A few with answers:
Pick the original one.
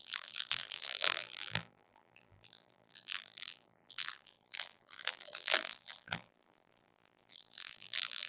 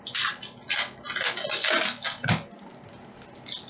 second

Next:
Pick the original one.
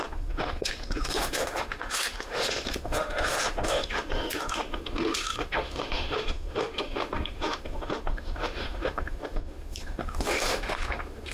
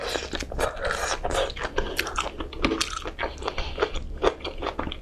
second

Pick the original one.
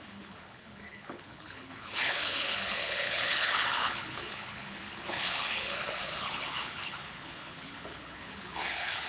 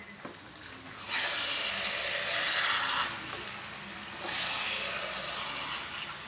second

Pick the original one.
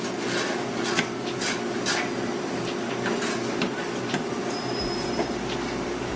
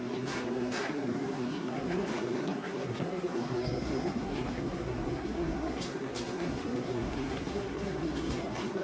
first